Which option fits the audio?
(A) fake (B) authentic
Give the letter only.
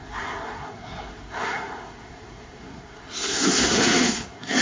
A